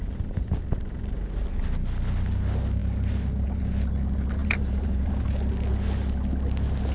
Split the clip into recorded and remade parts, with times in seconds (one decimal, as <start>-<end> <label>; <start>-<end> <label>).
0.0-4.4 recorded; 4.4-5.1 remade; 5.1-6.9 recorded